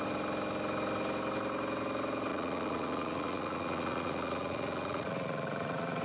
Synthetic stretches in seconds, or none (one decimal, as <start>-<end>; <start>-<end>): 2.3-6.0